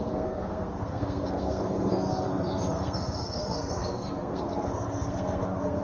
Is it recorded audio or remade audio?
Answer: remade